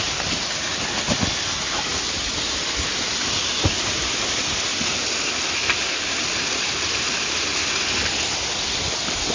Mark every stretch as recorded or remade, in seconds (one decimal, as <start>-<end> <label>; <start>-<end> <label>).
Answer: 0.0-9.3 recorded